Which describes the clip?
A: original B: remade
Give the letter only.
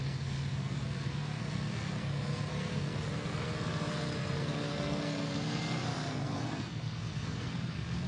B